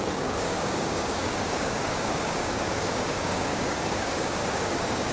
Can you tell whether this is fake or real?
fake